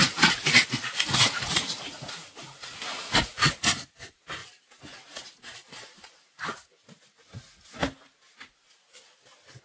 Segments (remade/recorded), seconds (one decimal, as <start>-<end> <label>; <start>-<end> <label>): 0.0-3.5 remade; 3.5-9.6 recorded